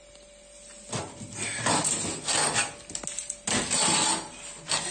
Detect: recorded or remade recorded